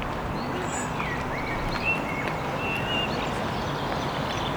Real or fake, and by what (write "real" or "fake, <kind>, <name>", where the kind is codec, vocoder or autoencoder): real